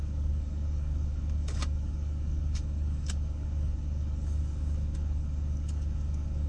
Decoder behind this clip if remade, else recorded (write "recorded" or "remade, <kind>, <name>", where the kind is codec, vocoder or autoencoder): remade, codec, DAC